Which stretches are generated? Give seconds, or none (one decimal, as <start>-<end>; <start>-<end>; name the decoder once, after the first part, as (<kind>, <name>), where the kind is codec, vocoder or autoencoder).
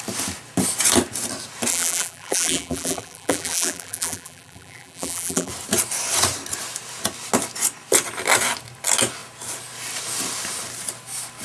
1.7-5.5 (vocoder, BigVGAN v2)